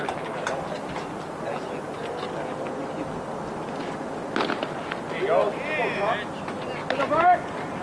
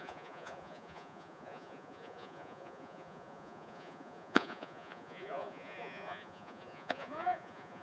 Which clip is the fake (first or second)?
second